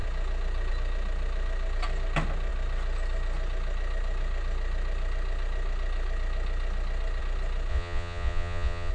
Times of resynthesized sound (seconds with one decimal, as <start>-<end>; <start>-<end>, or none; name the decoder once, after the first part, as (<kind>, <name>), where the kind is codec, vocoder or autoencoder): 7.7-8.9 (vocoder, Vocos)